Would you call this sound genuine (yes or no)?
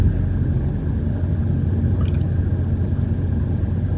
yes